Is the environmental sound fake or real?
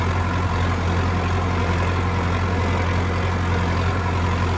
real